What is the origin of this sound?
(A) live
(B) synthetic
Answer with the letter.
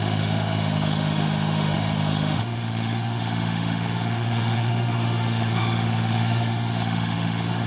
B